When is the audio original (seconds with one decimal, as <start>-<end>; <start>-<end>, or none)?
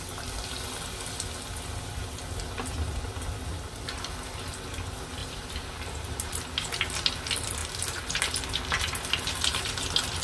0.0-5.2; 6.3-7.6; 8.2-10.2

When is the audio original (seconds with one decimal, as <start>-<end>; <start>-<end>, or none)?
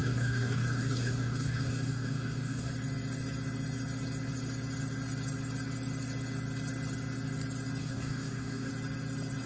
2.7-7.8; 8.7-9.5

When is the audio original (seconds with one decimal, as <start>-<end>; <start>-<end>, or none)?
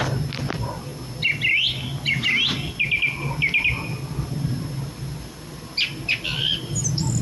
0.0-7.2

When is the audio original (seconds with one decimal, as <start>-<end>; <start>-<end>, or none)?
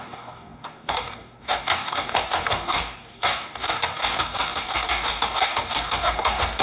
none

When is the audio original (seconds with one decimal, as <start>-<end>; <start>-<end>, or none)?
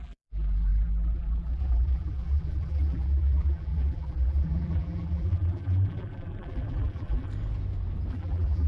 7.3-8.1